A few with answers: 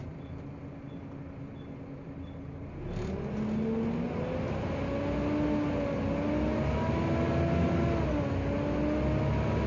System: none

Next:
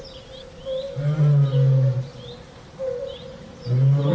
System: none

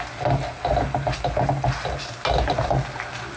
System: none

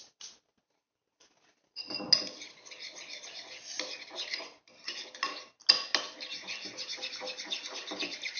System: none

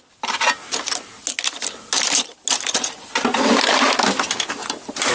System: none